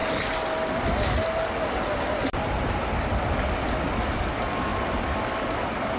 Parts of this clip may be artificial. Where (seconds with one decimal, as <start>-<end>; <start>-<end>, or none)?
none